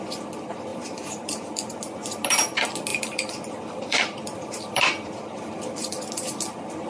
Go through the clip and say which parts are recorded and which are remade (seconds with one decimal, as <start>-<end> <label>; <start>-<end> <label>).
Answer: 0.0-0.7 recorded; 0.7-1.6 remade; 1.6-2.9 recorded; 2.9-6.1 remade; 6.1-6.9 recorded